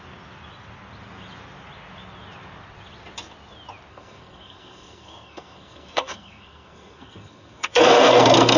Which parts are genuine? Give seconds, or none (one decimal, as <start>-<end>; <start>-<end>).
0.0-3.9

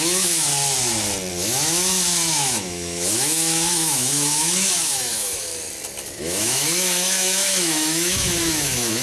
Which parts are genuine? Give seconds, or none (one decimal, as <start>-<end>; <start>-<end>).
0.5-1.3; 5.5-6.1

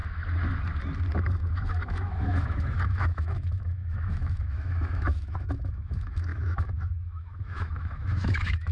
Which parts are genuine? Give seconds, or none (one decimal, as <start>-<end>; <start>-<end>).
0.0-1.5

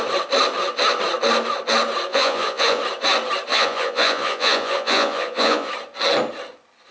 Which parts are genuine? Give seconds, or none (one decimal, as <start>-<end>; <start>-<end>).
0.0-2.1; 2.8-3.5; 5.7-6.9

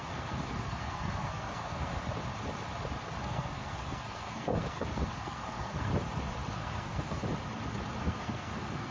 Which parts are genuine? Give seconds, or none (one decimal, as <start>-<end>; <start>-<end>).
1.9-3.2; 5.9-6.5; 7.2-8.0